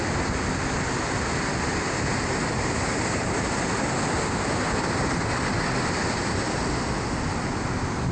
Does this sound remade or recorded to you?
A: recorded